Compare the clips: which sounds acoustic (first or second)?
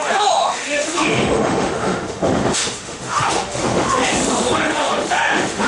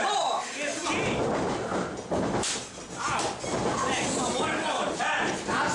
second